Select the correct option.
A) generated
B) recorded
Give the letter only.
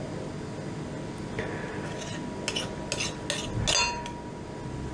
B